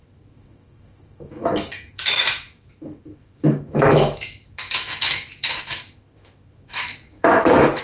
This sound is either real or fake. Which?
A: fake